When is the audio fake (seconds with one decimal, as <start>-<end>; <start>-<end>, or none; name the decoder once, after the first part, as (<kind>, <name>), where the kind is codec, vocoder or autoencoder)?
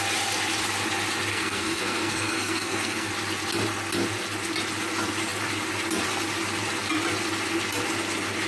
1.3-3.1 (codec, SNAC)